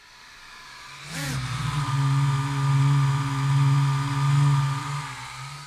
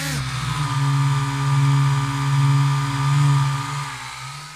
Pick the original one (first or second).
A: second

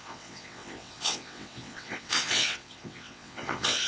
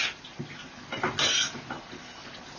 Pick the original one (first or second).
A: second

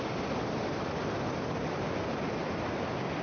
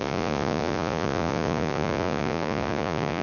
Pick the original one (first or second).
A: first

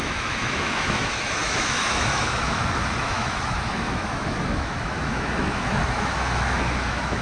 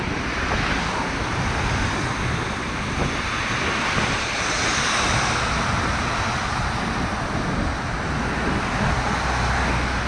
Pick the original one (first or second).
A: second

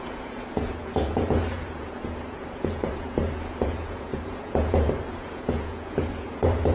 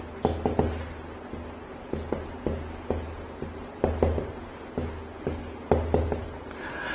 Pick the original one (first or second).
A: second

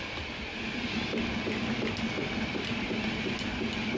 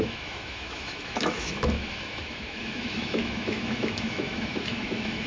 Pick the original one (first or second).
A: first